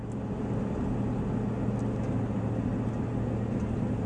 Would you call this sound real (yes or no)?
yes